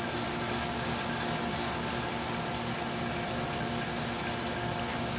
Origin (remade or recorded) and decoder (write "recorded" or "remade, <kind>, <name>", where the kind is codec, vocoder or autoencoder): recorded